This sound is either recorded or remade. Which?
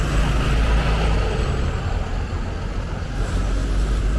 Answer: recorded